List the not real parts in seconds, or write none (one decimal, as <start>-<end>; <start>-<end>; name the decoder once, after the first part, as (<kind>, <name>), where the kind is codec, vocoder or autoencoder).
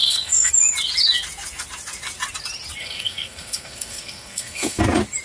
0.0-0.5 (codec, SNAC); 2.8-4.8